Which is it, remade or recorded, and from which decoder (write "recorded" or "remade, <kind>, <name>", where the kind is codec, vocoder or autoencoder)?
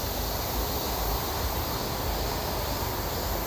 remade, vocoder, BigVGAN v2